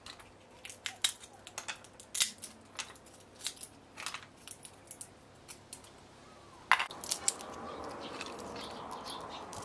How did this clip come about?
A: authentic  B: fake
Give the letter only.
A